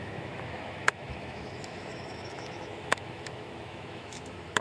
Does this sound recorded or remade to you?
remade